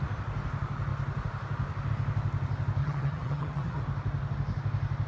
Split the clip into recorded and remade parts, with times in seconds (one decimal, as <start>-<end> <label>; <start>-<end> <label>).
0.0-2.8 recorded; 2.8-3.8 remade; 3.8-5.1 recorded